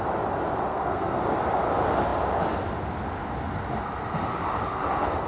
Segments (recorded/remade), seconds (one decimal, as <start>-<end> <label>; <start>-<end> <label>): 0.0-0.7 recorded; 0.7-1.2 remade; 1.2-5.3 recorded